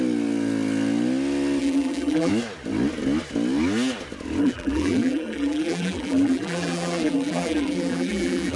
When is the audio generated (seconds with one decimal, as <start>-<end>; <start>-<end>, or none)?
1.6-2.3; 4.4-8.6

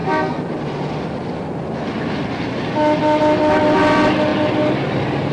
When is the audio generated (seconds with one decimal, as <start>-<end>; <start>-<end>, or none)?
none

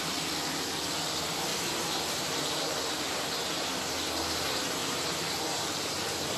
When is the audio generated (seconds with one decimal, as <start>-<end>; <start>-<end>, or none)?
1.5-3.7; 4.8-5.9

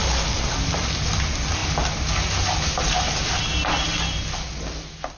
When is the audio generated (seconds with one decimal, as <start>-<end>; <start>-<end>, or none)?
none

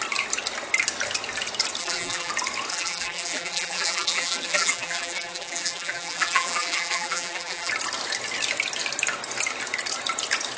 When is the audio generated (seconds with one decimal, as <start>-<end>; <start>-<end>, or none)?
1.8-2.3; 2.7-7.7

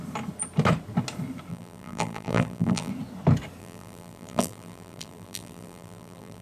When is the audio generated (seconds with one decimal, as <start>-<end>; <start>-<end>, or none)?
1.5-2.9; 3.6-6.4